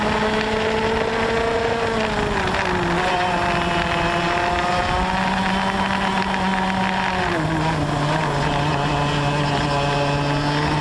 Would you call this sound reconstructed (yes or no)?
no